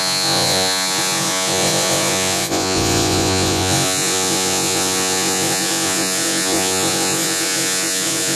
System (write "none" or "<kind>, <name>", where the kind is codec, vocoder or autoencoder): vocoder, Vocos